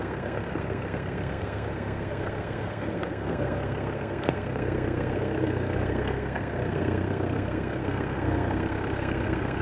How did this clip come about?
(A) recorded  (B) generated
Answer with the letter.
B